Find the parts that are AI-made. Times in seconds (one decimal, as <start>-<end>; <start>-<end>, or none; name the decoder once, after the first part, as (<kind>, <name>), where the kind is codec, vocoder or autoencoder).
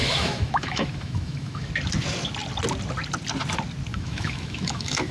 0.0-1.7 (autoencoder, DAC-VAE); 3.9-5.1